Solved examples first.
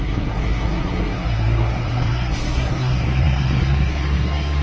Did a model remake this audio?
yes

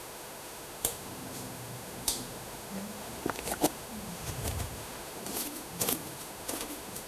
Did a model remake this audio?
yes